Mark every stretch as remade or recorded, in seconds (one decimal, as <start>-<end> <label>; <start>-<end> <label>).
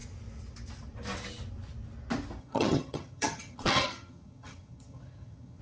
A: 0.0-2.4 recorded; 2.4-5.6 remade